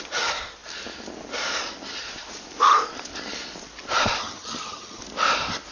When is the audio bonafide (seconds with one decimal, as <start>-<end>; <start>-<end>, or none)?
0.0-4.2; 5.0-5.7